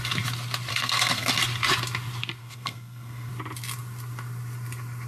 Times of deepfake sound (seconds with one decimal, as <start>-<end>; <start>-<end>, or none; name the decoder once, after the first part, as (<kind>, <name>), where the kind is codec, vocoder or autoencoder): 0.7-1.3 (codec, SNAC); 2.4-3.3